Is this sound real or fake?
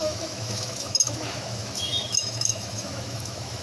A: fake